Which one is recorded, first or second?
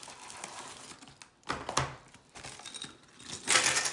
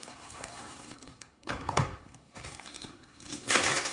first